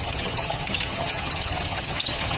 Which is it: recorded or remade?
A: remade